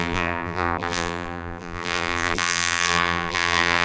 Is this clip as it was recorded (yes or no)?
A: no